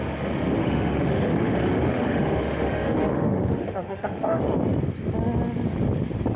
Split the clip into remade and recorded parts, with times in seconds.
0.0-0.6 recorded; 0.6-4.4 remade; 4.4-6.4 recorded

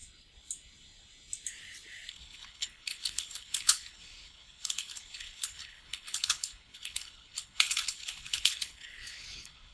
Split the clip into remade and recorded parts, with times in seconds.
0.0-2.1 recorded; 2.1-9.7 remade

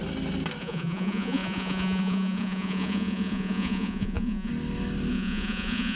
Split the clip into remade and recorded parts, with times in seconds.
0.0-0.6 recorded; 0.6-4.5 remade; 4.5-5.1 recorded; 5.1-6.0 remade

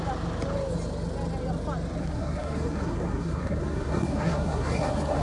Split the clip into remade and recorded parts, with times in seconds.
0.0-2.0 recorded; 2.0-5.2 remade